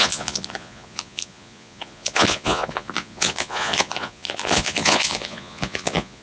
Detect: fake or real fake